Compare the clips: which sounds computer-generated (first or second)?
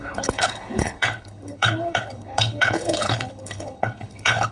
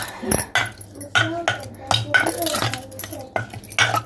first